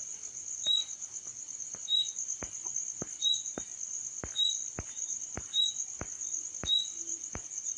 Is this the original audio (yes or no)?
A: yes